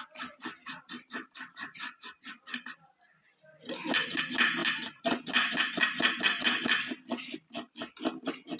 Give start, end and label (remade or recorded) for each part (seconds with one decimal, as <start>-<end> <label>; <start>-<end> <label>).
0.0-0.5 recorded; 0.5-2.3 remade; 2.3-8.6 recorded